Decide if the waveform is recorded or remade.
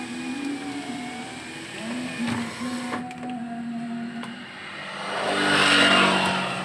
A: recorded